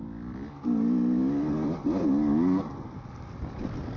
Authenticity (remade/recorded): recorded